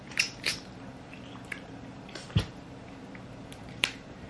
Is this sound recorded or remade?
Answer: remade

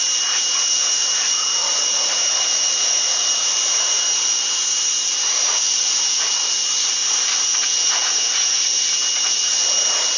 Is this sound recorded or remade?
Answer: remade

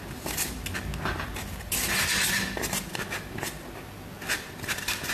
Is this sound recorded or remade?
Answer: recorded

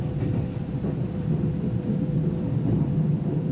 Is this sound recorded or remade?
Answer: remade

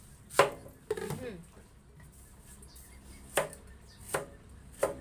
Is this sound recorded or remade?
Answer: recorded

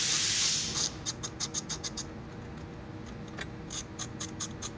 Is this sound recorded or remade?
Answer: recorded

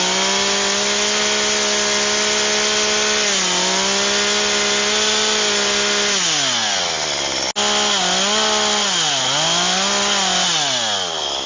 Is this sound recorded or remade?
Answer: recorded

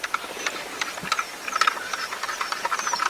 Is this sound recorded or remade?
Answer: remade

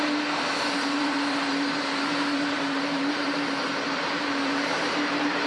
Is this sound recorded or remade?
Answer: remade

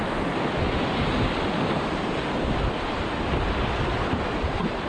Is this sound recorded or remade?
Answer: recorded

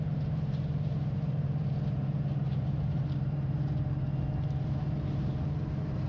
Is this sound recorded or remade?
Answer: remade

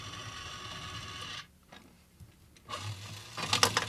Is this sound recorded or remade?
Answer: recorded